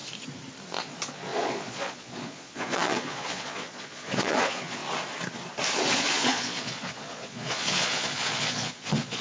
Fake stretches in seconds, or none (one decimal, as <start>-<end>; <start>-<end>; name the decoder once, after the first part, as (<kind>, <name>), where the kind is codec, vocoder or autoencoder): 0.8-4.8 (vocoder, Vocos); 5.9-9.2